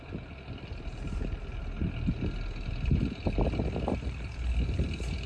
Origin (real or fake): real